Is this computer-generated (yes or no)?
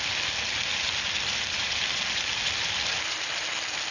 no